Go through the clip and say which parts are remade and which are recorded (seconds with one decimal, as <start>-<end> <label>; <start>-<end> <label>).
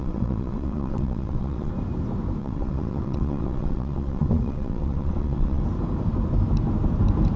0.0-1.7 remade; 1.7-2.4 recorded; 2.4-5.6 remade; 5.6-7.4 recorded